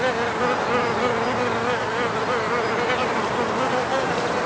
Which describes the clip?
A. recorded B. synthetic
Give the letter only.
A